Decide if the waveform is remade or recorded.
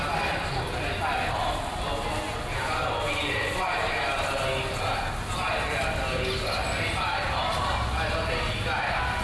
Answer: recorded